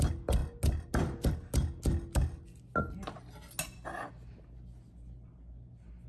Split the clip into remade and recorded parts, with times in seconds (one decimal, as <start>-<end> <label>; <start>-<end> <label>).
0.0-6.1 recorded